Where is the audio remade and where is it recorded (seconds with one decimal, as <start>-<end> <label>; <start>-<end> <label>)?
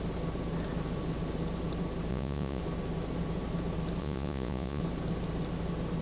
0.0-2.1 recorded; 2.1-2.6 remade; 2.6-4.0 recorded; 4.0-4.8 remade; 4.8-6.0 recorded